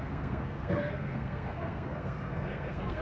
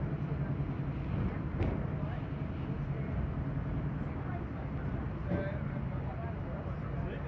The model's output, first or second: first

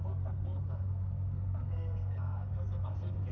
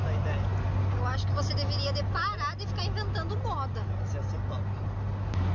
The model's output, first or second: first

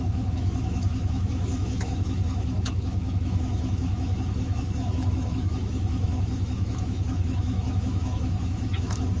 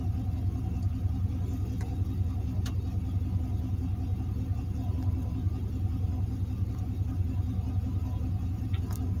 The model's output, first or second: first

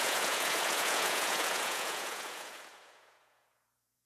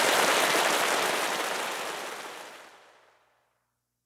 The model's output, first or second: first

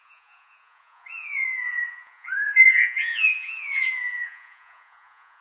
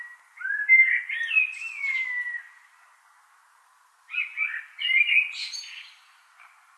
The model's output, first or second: first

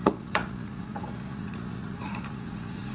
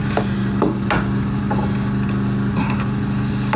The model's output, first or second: first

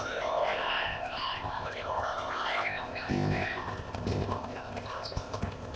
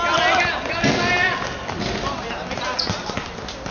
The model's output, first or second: first